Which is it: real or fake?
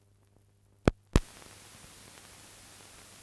real